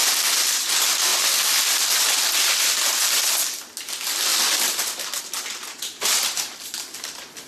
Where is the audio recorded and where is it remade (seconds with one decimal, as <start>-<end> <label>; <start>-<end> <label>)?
0.0-7.5 recorded